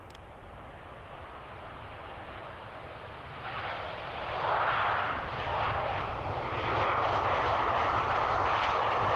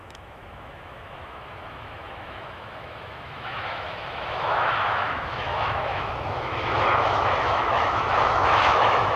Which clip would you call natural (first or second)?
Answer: first